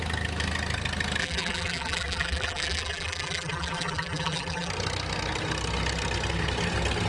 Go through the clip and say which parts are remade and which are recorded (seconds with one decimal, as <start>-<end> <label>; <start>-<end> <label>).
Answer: 0.0-1.2 recorded; 1.2-4.7 remade; 4.7-7.1 recorded